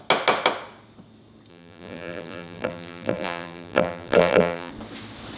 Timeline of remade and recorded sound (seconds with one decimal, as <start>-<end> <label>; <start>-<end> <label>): 0.0-1.5 recorded; 1.5-4.7 remade; 4.7-5.4 recorded

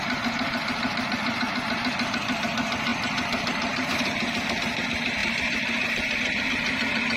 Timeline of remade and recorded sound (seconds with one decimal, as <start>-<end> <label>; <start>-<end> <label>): 0.0-2.9 recorded; 2.9-4.6 remade; 4.6-5.2 recorded; 5.2-6.4 remade; 6.4-7.2 recorded

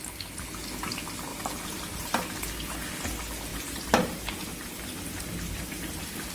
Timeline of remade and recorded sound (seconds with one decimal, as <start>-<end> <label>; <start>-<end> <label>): 0.0-1.3 recorded; 1.3-2.2 remade; 2.2-3.5 recorded; 3.5-6.3 remade

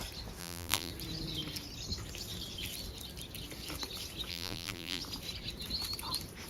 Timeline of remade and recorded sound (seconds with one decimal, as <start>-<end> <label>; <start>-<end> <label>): 0.0-0.4 recorded; 0.4-0.9 remade; 0.9-4.3 recorded; 4.3-5.0 remade; 5.0-6.5 recorded

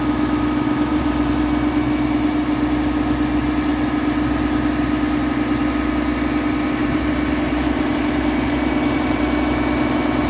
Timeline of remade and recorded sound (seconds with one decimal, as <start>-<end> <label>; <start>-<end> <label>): 0.0-0.9 recorded; 0.9-1.5 remade; 1.5-6.8 recorded; 6.8-9.2 remade; 9.2-10.3 recorded